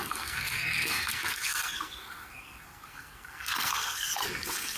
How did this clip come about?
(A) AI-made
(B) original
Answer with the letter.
A